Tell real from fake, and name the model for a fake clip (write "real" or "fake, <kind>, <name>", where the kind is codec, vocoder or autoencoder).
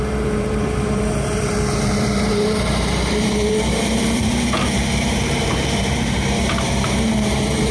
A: fake, vocoder, BigVGAN v2